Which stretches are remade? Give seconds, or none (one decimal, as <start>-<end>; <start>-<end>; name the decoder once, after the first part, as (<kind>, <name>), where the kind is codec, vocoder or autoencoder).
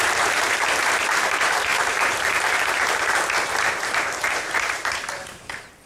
0.0-5.9 (vocoder, BigVGAN v2)